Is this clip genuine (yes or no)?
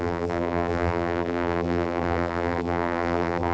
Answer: no